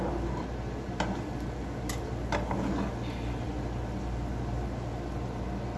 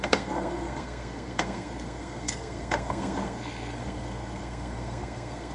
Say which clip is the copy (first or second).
second